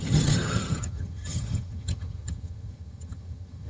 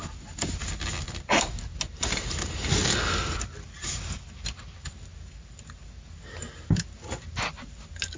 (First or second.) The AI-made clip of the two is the first